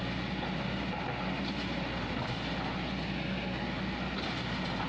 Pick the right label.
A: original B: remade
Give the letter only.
A